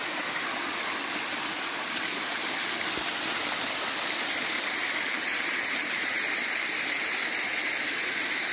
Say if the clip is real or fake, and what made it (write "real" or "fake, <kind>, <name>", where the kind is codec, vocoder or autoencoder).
real